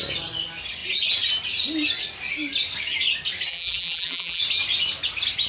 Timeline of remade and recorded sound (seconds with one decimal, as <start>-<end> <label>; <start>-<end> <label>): 0.0-3.5 recorded; 3.5-4.4 remade; 4.4-5.5 recorded